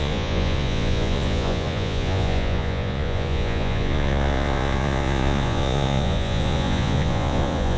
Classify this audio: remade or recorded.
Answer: remade